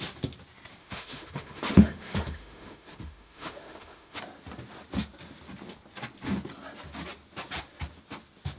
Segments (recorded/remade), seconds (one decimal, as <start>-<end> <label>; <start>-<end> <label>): 0.0-0.8 recorded; 0.8-4.2 remade; 4.2-8.6 recorded